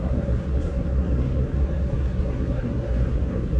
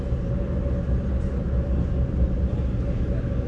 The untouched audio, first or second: second